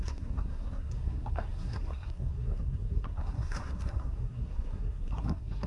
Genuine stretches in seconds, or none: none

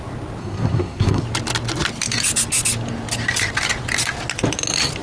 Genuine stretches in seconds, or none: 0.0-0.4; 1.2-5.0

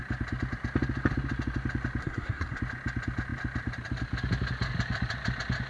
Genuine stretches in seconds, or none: 0.0-2.0; 2.6-5.7

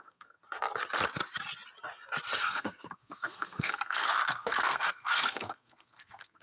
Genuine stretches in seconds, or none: 0.4-2.4

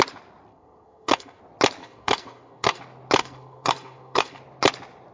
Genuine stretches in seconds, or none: 0.0-0.5; 1.4-1.8; 2.8-3.2; 4.4-5.1

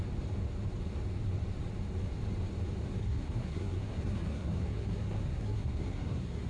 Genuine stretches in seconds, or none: 0.0-3.0

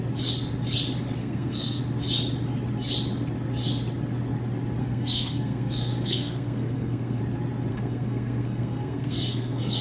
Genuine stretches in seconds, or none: 0.0-1.2; 1.8-4.8; 7.2-7.7